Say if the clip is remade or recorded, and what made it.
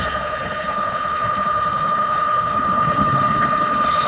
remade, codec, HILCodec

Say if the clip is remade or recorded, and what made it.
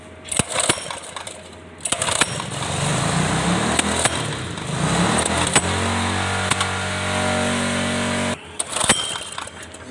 recorded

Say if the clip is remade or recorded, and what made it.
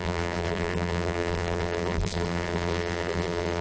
remade, vocoder, BigVGAN v2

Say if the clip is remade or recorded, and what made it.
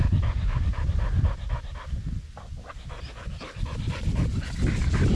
recorded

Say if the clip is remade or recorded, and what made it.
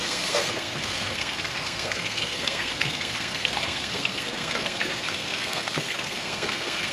remade, codec, SNAC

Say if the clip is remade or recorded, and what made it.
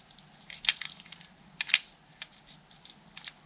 recorded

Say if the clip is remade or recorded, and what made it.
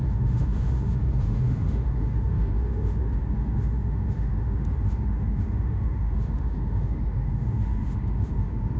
remade, autoencoder, DAC-VAE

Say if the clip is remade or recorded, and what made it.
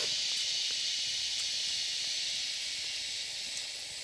remade, vocoder, BigVGAN v2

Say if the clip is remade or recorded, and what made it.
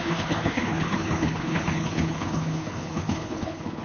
remade, codec, HILCodec